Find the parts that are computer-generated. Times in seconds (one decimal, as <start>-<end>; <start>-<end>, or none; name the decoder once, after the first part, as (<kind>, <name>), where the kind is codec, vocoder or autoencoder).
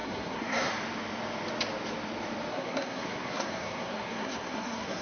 0.0-0.7 (codec, SNAC); 2.5-5.0